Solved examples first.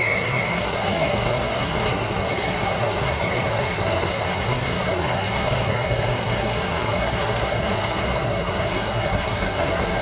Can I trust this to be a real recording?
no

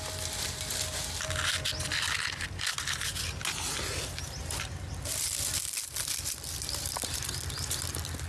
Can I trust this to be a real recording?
yes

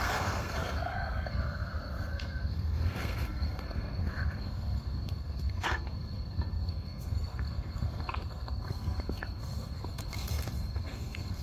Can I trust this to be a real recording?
no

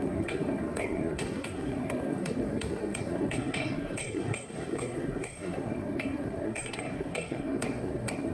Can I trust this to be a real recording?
no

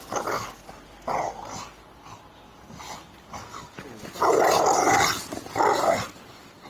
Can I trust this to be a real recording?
yes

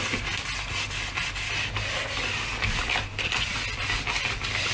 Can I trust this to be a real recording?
yes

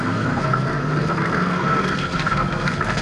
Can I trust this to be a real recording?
no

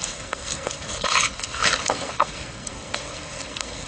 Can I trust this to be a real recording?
no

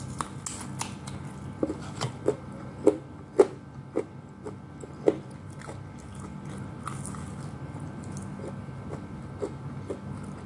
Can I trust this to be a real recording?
yes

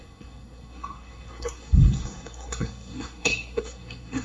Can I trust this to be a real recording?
no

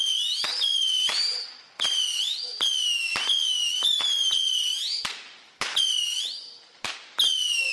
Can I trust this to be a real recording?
yes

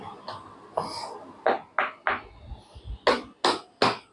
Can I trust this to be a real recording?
yes